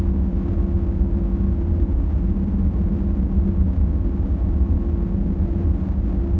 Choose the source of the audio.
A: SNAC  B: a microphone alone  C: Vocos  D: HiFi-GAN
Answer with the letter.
B